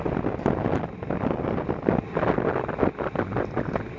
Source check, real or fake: real